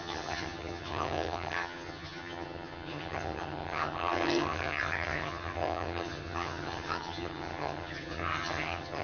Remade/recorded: remade